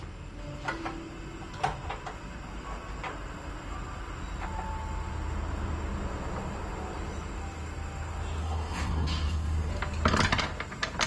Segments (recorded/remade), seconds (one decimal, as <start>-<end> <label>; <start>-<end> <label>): 0.0-8.4 recorded; 8.4-9.7 remade; 9.7-11.1 recorded